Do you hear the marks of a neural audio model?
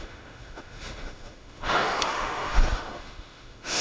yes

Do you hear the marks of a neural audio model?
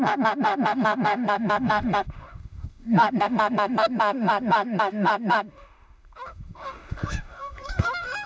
yes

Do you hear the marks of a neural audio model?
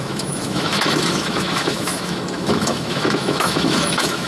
yes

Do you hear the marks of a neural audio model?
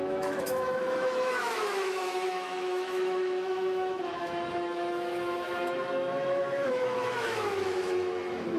yes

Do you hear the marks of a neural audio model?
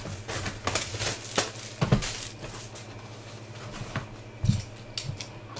no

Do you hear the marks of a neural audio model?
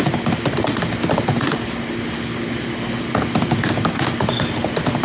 no